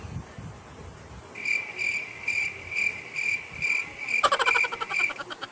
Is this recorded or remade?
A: recorded